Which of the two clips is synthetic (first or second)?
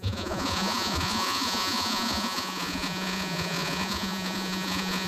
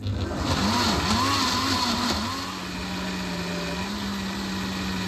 first